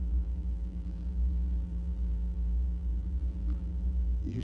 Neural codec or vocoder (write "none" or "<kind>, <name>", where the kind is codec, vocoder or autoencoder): vocoder, BigVGAN v2